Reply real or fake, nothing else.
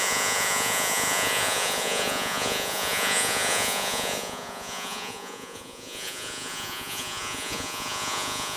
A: fake